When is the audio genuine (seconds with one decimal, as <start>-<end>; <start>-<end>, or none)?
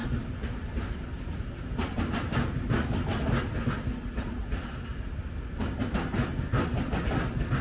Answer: 0.0-7.6